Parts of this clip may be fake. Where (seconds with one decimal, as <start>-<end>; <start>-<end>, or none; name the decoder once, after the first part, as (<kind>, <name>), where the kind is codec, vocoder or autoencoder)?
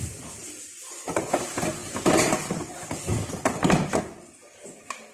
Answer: none